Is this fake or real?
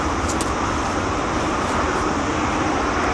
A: real